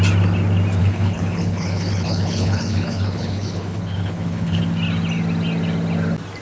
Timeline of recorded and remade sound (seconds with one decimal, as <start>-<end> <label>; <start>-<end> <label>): 0.0-0.8 recorded; 0.8-4.6 remade; 4.6-6.4 recorded

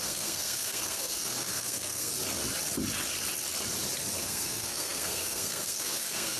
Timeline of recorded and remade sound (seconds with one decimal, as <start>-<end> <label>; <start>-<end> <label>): 0.0-2.1 remade; 2.1-4.2 recorded; 4.2-6.4 remade

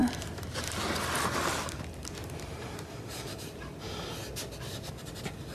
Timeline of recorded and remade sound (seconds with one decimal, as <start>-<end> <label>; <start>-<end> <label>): 0.0-2.2 recorded; 2.2-3.8 remade; 3.8-5.5 recorded

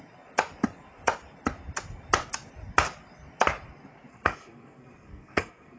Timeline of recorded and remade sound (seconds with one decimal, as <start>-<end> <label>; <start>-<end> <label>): 0.0-4.1 recorded; 4.1-5.8 remade